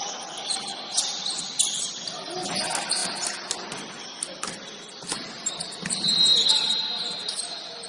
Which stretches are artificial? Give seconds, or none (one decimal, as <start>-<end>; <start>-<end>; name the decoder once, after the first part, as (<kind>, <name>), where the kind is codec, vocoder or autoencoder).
none